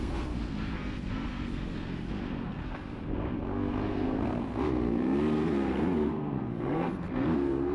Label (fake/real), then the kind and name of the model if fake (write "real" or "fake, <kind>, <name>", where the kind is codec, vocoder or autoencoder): fake, codec, SNAC